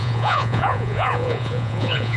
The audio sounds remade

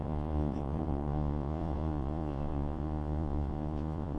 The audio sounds remade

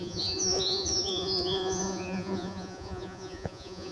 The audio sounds remade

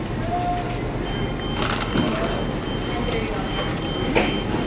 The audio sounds recorded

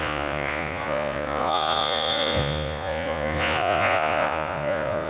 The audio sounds remade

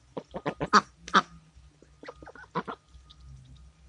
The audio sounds recorded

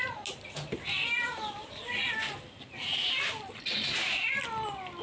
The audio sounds recorded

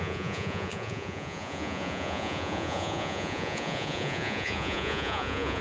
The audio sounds remade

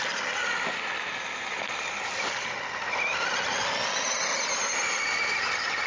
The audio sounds recorded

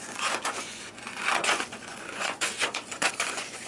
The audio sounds remade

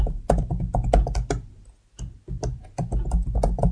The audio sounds recorded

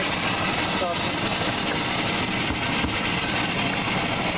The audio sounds recorded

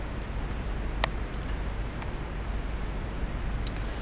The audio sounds recorded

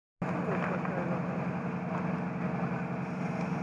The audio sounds recorded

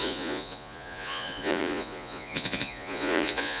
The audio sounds remade